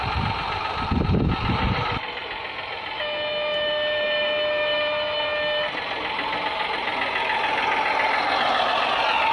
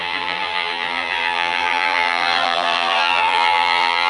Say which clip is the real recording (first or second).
first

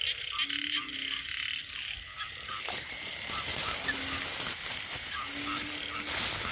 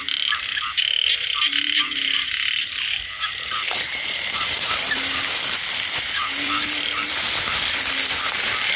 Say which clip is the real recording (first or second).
first